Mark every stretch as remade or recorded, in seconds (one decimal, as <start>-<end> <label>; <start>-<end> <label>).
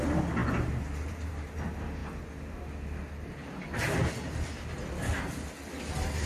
0.0-6.3 recorded